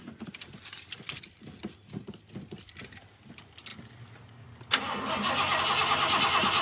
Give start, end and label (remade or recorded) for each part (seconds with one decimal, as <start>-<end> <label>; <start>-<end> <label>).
0.0-1.6 remade; 1.6-6.6 recorded